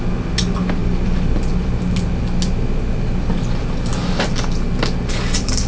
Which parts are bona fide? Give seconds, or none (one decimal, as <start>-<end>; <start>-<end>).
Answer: 0.0-5.7